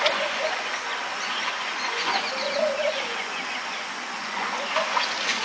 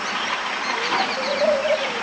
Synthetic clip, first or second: first